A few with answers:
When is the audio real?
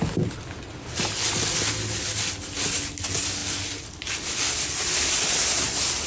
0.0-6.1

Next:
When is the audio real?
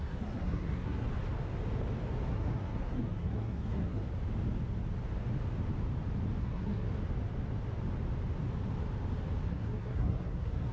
1.1-2.3; 4.1-6.4; 6.9-9.5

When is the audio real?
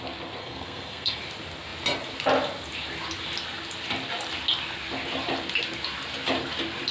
0.0-0.4; 1.2-6.9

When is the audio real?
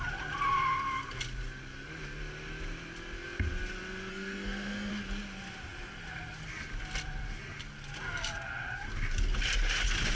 0.0-4.1; 4.9-10.1